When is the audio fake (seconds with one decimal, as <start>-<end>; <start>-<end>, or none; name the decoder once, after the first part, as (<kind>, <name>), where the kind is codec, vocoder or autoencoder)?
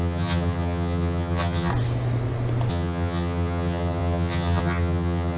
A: 0.0-1.7 (vocoder, HiFi-GAN); 2.7-5.4